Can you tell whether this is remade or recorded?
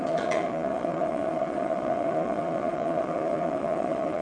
remade